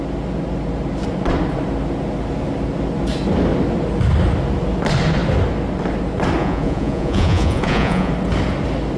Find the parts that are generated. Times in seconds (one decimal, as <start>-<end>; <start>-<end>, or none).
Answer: 6.4-8.1